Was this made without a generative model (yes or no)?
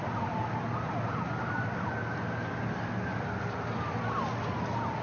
yes